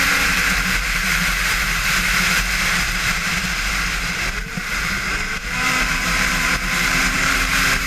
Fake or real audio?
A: fake